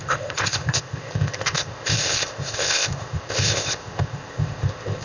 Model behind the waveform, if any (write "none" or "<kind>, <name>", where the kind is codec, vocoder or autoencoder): codec, ZipCodec